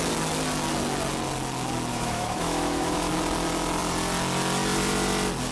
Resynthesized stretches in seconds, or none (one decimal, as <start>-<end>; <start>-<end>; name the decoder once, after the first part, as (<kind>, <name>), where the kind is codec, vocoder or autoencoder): 1.9-3.1 (autoencoder, DAC-VAE)

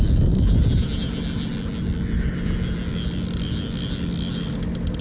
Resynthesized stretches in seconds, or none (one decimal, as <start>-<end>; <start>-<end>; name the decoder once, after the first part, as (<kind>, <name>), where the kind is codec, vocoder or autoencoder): none

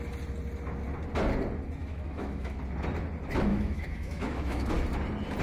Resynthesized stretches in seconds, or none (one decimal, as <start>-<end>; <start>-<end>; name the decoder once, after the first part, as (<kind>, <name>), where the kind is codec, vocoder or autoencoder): 1.8-2.6 (autoencoder, DAC-VAE); 3.5-4.7

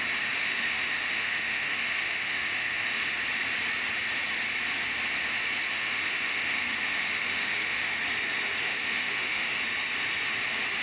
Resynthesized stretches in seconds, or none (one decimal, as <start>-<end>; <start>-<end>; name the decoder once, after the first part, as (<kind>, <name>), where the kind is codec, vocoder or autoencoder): 0.4-3.1 (autoencoder, DAC-VAE); 5.7-7.9; 8.6-9.6

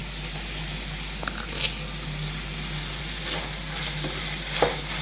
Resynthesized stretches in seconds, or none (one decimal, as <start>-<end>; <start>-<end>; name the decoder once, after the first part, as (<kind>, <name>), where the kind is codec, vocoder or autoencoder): none